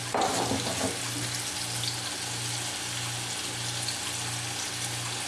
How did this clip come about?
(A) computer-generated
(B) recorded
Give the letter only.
B